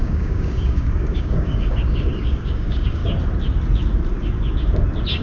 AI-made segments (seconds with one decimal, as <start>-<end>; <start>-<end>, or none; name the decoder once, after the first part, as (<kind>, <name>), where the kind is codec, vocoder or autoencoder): 0.0-3.0 (codec, DAC)